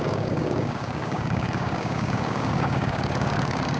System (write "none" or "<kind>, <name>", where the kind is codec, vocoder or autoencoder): codec, DAC